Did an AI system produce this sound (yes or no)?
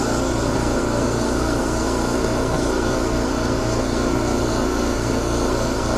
yes